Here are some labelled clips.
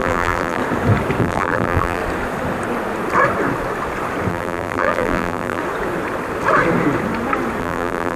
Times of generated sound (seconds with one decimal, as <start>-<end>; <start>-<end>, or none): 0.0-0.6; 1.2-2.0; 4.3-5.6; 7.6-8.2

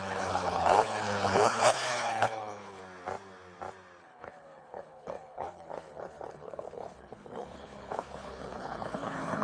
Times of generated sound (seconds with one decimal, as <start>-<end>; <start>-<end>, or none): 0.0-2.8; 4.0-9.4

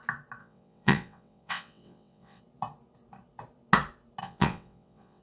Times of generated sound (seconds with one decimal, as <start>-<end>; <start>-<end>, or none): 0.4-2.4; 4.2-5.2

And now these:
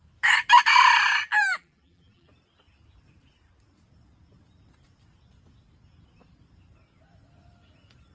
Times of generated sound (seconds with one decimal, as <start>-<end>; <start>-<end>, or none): 1.2-2.3

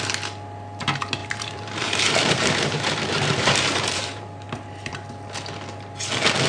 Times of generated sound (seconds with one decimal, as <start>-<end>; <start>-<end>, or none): 1.2-5.1

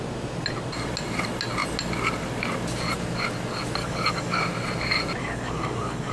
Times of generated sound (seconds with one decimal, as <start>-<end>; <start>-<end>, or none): 3.8-4.4; 5.2-6.1

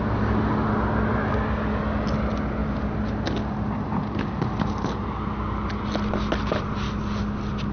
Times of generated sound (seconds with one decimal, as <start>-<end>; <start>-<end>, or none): none

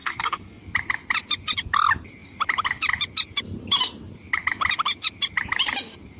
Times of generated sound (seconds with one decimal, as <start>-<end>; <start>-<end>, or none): 0.0-0.6